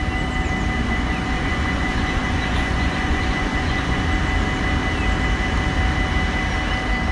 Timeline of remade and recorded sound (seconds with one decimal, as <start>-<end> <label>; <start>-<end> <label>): 0.0-0.8 recorded; 0.8-4.0 remade; 4.0-7.1 recorded